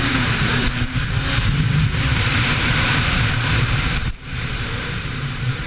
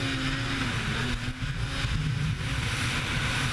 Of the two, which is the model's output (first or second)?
first